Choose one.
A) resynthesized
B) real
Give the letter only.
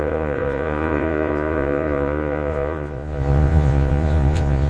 A